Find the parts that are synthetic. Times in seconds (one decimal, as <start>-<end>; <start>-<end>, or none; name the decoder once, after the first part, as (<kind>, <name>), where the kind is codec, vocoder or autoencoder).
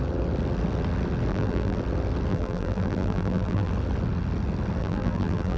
1.3-1.8 (vocoder, BigVGAN v2); 2.3-3.7; 4.8-5.6